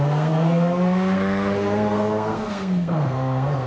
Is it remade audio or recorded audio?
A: remade